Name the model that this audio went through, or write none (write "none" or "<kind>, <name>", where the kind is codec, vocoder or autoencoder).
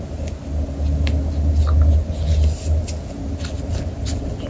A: none